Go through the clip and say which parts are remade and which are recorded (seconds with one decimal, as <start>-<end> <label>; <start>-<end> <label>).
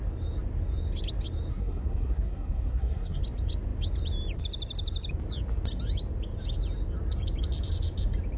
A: 0.0-1.5 recorded; 1.5-3.2 remade; 3.2-8.4 recorded